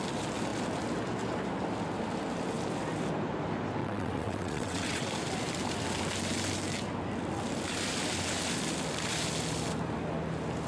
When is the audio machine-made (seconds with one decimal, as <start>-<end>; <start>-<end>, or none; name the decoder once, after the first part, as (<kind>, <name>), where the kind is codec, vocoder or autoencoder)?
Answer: 3.8-5.1 (vocoder, WaveNeXt)